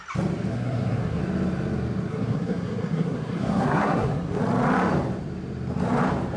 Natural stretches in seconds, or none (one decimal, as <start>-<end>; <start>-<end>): 0.0-0.5; 1.2-2.1; 4.4-6.4